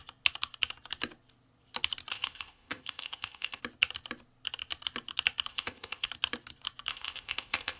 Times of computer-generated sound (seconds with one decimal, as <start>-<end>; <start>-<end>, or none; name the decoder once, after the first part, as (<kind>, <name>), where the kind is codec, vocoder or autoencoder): 2.1-3.6 (codec, ZipCodec); 5.5-6.1; 6.9-7.8